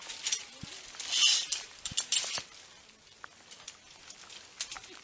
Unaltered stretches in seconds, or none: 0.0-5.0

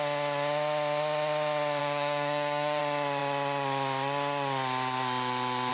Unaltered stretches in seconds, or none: 0.0-1.8; 2.8-5.7

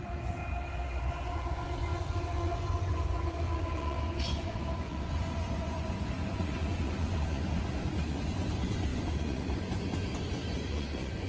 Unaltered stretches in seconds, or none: 0.4-1.0

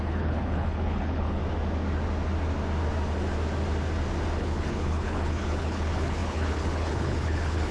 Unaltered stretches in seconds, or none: 1.4-4.4

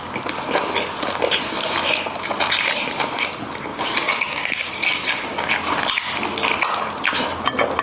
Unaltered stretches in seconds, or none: 0.0-3.7; 5.5-7.8

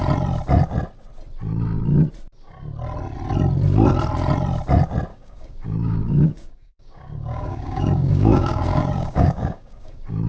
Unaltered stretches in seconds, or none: 0.0-5.1

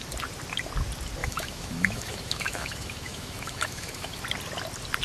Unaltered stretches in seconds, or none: 0.0-1.2; 4.2-5.0